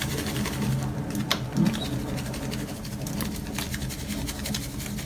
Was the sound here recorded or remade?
recorded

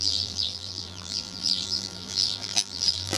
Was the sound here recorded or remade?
remade